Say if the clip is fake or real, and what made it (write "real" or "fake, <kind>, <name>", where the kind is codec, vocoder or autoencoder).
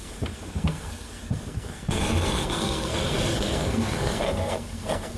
fake, codec, SNAC